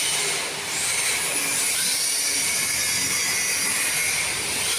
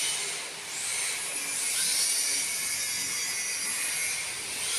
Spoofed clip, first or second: first